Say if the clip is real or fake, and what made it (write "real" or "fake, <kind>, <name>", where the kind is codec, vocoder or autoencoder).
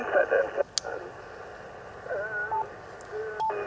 real